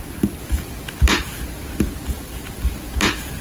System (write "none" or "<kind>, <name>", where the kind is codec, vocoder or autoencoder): none